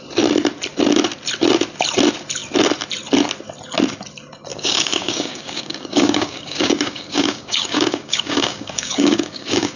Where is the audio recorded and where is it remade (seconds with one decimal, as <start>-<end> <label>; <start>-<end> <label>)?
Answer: 0.0-4.5 recorded; 4.5-9.8 remade